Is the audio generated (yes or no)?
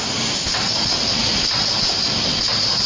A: no